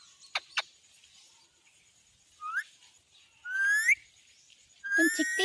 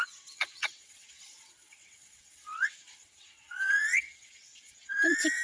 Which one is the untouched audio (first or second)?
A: first